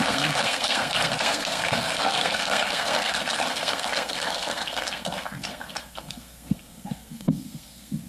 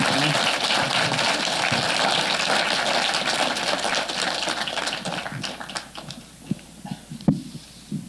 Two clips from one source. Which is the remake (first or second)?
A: first